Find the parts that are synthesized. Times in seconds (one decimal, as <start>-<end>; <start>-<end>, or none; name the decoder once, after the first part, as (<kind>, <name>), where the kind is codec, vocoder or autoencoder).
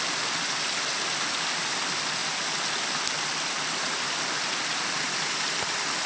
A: none